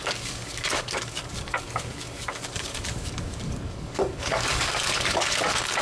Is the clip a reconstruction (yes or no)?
yes